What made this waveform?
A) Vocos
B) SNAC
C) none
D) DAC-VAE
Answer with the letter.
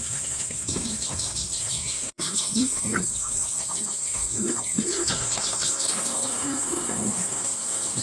B